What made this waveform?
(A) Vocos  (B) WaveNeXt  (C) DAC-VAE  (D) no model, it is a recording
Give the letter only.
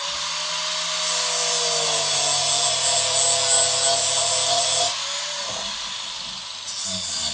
D